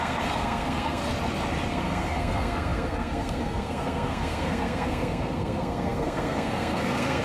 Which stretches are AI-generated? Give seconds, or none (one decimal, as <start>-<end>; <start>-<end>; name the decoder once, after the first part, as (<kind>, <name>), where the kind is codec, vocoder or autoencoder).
0.0-1.0 (codec, SNAC); 1.7-7.2